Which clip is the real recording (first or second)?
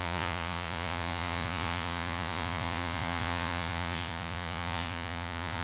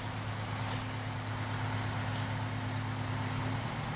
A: second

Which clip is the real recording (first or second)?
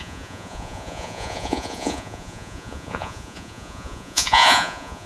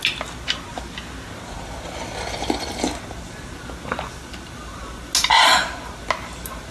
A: second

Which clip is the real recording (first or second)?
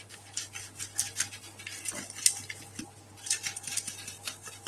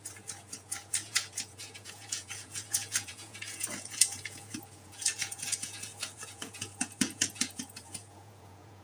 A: first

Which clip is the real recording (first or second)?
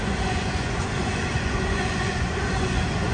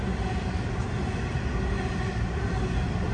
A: second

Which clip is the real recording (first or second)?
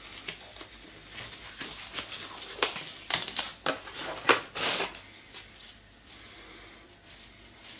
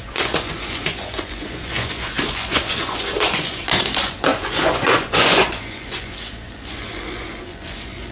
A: first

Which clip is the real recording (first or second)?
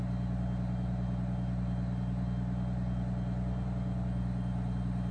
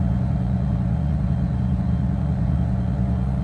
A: first